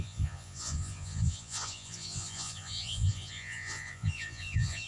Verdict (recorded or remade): remade